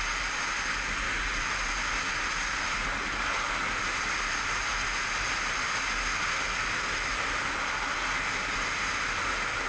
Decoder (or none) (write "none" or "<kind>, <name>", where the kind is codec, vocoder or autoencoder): none